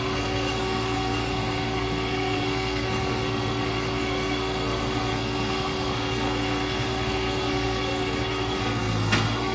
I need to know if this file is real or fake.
fake